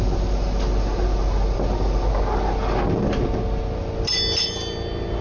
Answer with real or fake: real